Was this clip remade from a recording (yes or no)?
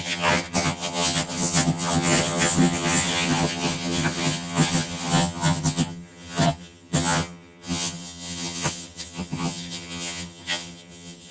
yes